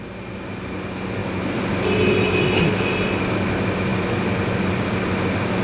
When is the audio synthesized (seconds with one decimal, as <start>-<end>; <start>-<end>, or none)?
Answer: none